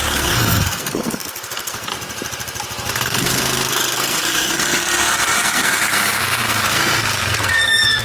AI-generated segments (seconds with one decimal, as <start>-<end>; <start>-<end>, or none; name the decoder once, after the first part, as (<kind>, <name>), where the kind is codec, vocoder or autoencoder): 0.0-1.9 (codec, SNAC); 2.9-8.0